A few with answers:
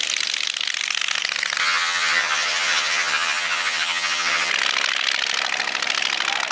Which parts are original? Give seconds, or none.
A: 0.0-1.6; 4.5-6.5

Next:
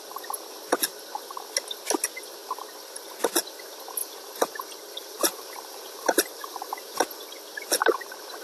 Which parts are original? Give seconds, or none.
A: 0.0-4.0; 4.6-5.0; 7.0-8.4

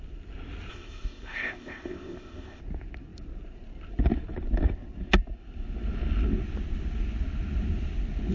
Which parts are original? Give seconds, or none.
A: 0.0-0.7; 2.6-8.3

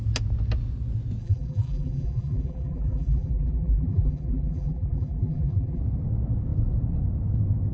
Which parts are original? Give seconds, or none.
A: 0.0-1.2; 5.8-7.7